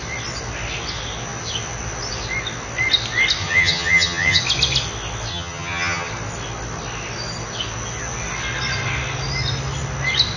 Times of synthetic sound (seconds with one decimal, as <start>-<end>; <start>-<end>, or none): 3.4-4.4; 5.3-6.1